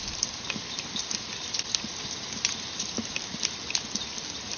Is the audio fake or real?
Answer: real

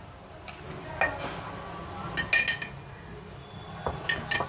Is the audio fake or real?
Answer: real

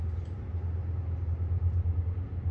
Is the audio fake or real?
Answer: real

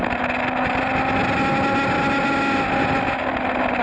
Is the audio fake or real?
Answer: real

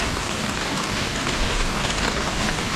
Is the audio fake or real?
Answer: fake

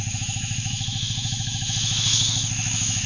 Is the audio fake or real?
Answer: fake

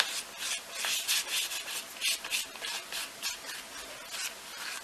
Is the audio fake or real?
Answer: real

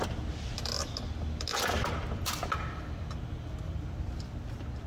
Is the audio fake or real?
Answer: real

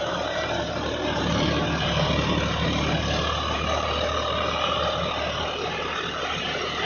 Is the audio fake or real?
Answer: fake